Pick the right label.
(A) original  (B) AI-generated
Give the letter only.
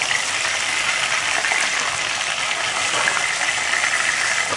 A